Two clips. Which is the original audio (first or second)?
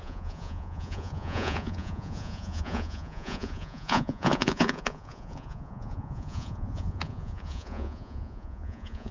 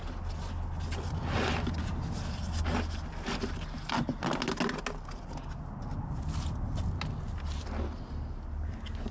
second